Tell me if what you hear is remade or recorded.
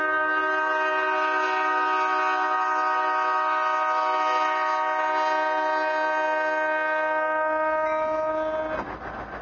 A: recorded